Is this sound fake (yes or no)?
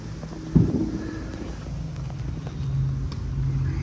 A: no